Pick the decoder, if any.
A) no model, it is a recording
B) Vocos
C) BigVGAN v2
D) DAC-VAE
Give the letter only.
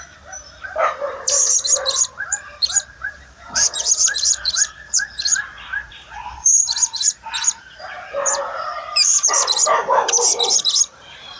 C